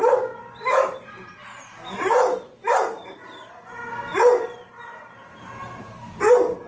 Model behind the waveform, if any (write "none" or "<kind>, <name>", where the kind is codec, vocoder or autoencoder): none